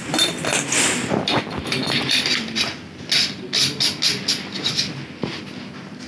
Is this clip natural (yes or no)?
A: yes